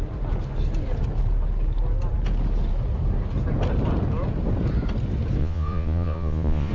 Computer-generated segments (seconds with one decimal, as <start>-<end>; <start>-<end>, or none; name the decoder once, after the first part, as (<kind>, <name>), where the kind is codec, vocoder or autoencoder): 5.4-6.7 (vocoder, Vocos)